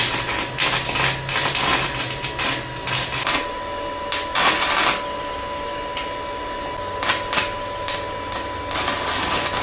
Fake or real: real